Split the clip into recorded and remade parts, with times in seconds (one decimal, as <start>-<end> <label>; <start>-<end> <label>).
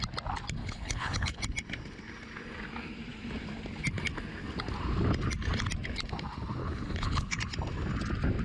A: 0.0-0.6 recorded; 0.6-1.4 remade; 1.4-6.6 recorded; 6.6-7.4 remade; 7.4-8.4 recorded